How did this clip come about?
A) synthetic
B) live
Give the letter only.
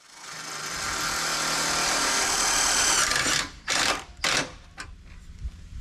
B